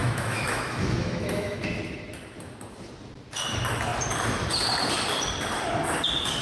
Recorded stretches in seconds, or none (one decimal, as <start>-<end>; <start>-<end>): 1.6-6.4